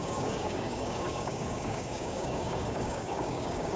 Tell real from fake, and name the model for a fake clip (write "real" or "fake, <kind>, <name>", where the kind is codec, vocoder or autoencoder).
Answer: fake, codec, DAC